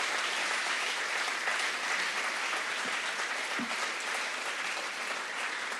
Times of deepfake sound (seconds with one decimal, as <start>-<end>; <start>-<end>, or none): 0.4-1.0